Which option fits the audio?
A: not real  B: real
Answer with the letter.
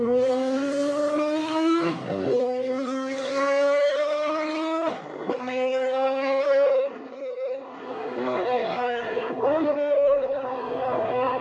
A